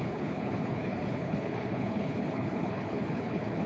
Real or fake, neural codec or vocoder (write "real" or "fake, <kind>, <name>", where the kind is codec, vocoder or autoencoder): fake, codec, HILCodec